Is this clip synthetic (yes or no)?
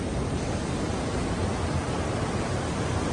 no